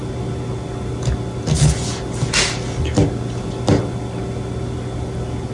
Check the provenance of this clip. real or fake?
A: real